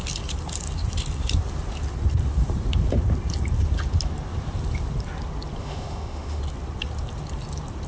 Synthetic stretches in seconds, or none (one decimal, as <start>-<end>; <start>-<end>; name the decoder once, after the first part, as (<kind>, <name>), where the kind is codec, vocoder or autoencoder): 5.6-6.4 (autoencoder, DAC-VAE)